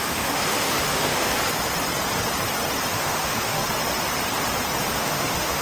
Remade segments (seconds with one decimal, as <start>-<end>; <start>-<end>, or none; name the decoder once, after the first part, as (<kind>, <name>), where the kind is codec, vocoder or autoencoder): 0.0-1.4 (autoencoder, DAC-VAE); 2.9-3.6; 5.0-5.6